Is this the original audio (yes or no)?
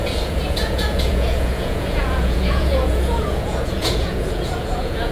no